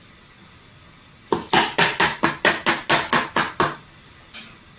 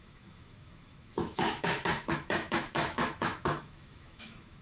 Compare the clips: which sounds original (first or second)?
first